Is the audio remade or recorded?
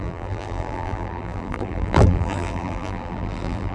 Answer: remade